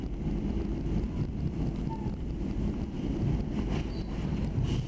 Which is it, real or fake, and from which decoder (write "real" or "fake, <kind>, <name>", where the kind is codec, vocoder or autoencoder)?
real